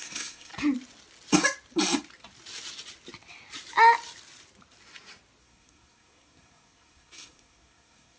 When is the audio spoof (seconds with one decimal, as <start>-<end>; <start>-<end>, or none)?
0.0-0.5; 5.4-8.2